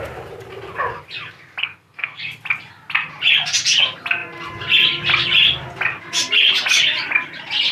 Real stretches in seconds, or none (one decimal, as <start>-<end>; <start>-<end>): 0.0-1.6; 2.2-7.7